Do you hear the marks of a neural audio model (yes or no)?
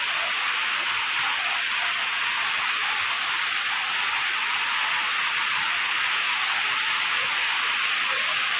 no